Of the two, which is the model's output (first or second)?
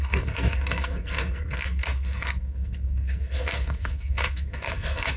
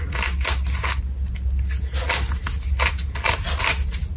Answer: first